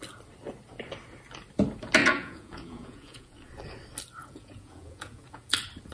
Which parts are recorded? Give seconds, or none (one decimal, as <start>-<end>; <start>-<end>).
0.0-2.0; 3.5-4.2; 5.5-5.9